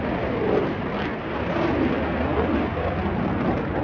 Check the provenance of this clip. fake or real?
real